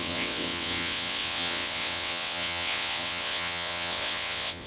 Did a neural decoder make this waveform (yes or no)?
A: yes